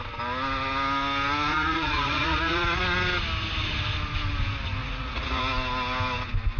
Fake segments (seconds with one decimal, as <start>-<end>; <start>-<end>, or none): 1.5-2.8; 4.8-5.4